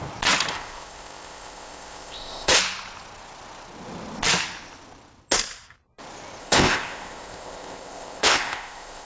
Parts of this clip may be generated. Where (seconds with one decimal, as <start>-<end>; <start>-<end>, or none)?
0.5-2.6; 6.4-9.1

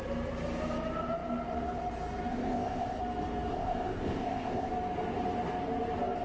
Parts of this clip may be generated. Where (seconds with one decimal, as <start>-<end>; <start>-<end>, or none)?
2.3-3.0; 3.5-4.7